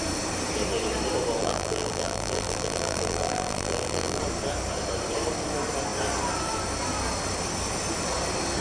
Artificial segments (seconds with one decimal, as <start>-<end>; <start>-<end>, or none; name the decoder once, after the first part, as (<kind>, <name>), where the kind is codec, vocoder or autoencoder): 1.4-4.2 (vocoder, BigVGAN v2)